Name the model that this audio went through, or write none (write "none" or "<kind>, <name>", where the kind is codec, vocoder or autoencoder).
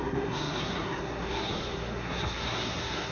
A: codec, SNAC